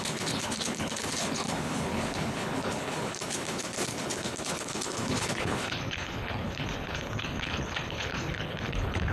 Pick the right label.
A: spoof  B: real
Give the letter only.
A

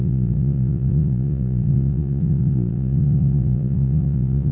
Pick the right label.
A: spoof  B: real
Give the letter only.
A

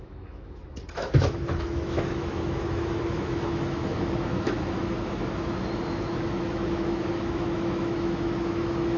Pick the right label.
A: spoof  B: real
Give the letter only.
A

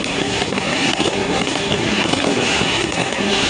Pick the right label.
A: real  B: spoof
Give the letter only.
B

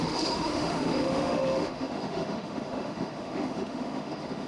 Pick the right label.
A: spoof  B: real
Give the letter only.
A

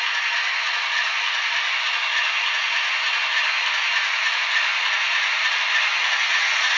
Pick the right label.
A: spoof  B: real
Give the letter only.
B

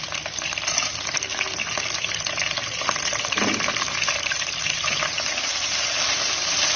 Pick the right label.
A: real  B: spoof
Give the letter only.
A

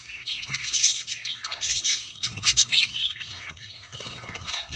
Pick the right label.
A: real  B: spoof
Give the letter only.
B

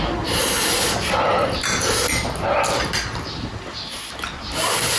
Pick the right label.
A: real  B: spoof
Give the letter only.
A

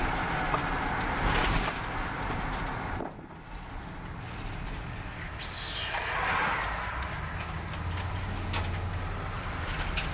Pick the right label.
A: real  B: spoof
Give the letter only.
A